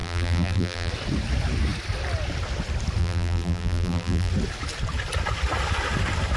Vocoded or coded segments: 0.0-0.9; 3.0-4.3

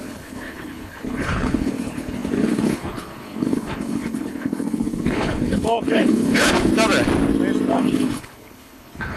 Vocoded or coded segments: 0.0-6.7; 7.7-9.2

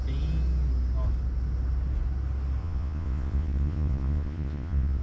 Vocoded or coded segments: 2.6-5.0

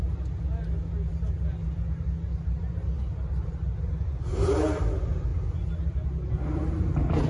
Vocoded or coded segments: none

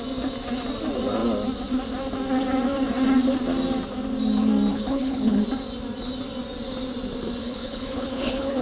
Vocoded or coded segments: 4.7-5.4; 7.4-8.6

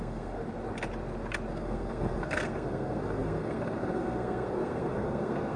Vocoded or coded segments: 0.0-0.4; 1.5-5.6

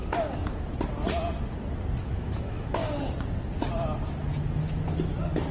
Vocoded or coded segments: 2.0-2.8